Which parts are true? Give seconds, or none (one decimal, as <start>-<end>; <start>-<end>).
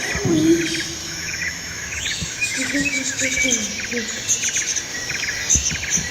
0.0-1.0; 3.4-6.1